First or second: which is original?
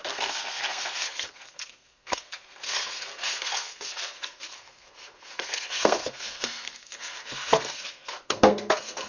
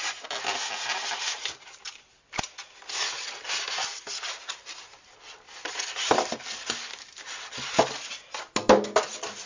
second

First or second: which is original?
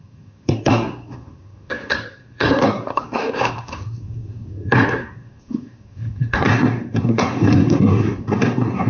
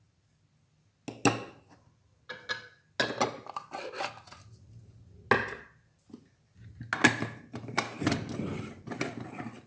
second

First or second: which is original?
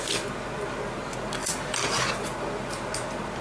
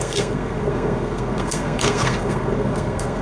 first